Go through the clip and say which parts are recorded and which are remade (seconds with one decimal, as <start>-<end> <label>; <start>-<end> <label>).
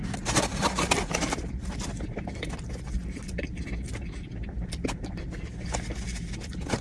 0.0-6.8 recorded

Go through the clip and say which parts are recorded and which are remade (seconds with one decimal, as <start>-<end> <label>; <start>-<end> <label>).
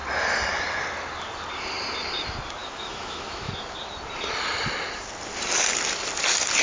0.0-2.6 recorded; 2.6-3.5 remade; 3.5-6.6 recorded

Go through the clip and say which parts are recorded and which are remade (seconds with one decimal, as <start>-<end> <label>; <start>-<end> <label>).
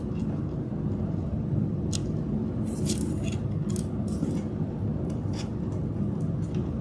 0.0-0.7 recorded; 0.7-3.0 remade; 3.0-4.9 recorded; 4.9-6.0 remade; 6.0-6.8 recorded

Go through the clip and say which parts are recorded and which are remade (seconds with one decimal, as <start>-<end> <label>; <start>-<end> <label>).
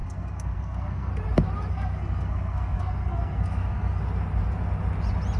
0.0-1.1 remade; 1.1-1.7 recorded; 1.7-4.0 remade; 4.0-5.4 recorded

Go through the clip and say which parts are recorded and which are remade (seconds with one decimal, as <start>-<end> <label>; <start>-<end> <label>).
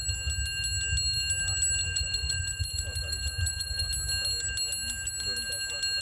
0.0-1.8 recorded; 1.8-3.9 remade; 3.9-6.0 recorded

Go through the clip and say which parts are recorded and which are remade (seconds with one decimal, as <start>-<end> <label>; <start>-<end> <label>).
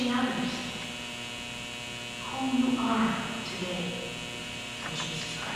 0.0-4.4 recorded; 4.4-4.9 remade; 4.9-5.6 recorded